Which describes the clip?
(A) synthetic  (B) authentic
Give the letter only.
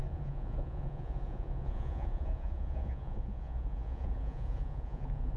A